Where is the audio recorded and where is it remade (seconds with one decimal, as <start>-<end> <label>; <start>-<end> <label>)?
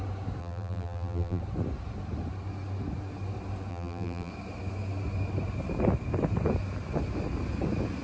0.0-0.4 recorded; 0.4-1.4 remade; 1.4-3.7 recorded; 3.7-4.3 remade; 4.3-8.0 recorded